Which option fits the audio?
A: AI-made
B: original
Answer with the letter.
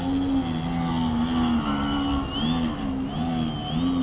B